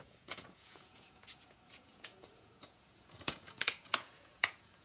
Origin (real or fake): fake